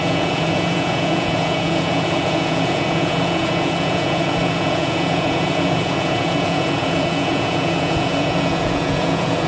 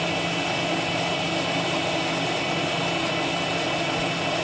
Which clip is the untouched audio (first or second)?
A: second